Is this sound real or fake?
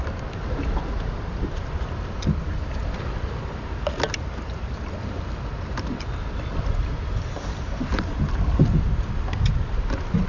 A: real